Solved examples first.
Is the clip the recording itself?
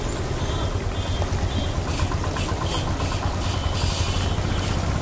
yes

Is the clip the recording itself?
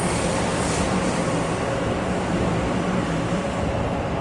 yes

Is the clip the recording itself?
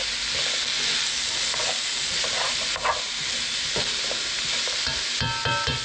yes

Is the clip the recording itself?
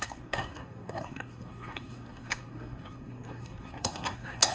no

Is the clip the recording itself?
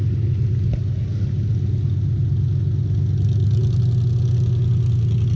yes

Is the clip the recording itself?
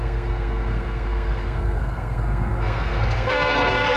no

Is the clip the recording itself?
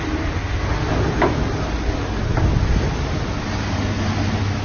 yes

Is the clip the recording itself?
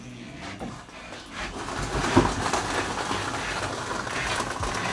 yes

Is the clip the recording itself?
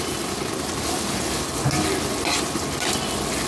yes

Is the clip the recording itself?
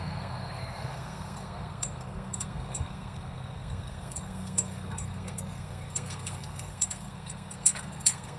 no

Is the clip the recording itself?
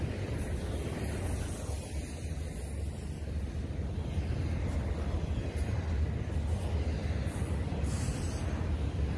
yes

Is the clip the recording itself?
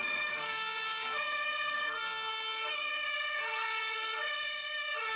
no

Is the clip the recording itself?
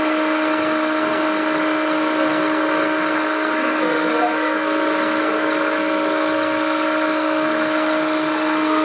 no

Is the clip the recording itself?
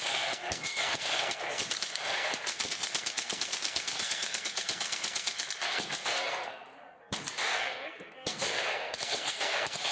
no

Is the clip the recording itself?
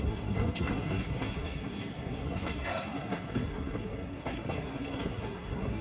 no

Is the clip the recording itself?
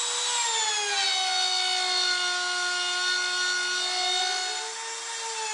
yes